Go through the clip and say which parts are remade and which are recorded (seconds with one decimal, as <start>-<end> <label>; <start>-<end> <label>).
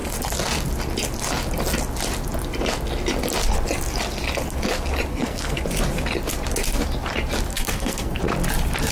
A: 0.0-5.1 recorded; 5.1-5.6 remade; 5.6-7.5 recorded; 7.5-8.2 remade; 8.2-8.9 recorded